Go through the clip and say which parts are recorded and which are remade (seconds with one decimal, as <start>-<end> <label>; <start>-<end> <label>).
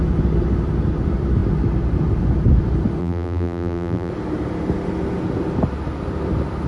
0.0-3.0 recorded; 3.0-4.1 remade; 4.1-6.7 recorded